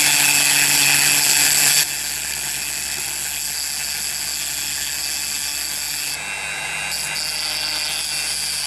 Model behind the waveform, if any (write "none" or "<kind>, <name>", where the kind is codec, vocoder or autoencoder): none